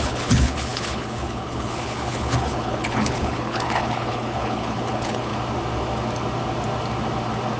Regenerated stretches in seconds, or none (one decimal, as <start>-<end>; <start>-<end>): 0.0-5.3